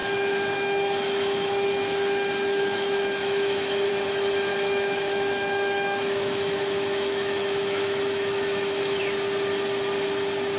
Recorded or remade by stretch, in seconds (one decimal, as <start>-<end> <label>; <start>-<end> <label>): 0.0-3.9 remade; 3.9-4.5 recorded; 4.5-9.0 remade; 9.0-10.6 recorded